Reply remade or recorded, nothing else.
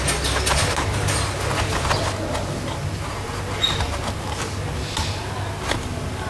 recorded